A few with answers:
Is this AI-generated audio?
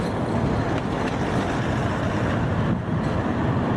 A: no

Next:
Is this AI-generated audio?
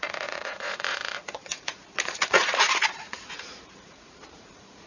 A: yes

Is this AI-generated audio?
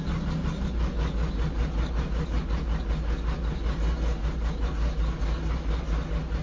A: no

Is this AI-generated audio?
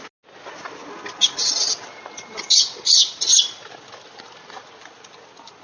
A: no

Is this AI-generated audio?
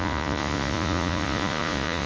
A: yes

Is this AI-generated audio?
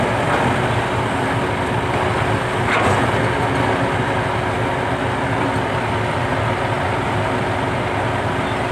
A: no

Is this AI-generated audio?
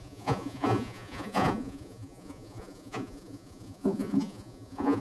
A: yes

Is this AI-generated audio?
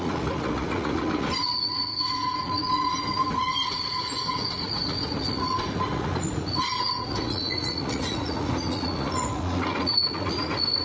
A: yes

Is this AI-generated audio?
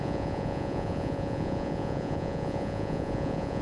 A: yes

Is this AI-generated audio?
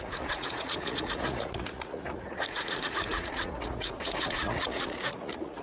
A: yes